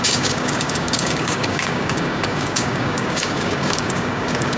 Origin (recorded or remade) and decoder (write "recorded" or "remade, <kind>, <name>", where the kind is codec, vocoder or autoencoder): remade, codec, DAC